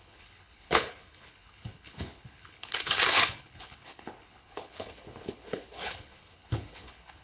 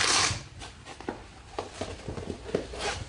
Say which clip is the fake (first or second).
first